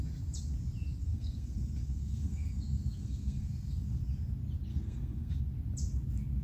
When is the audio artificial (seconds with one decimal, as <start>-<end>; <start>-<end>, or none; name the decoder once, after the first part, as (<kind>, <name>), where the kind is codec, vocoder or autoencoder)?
1.0-4.0 (codec, SNAC); 4.7-5.4